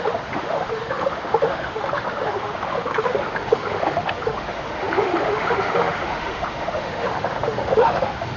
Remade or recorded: remade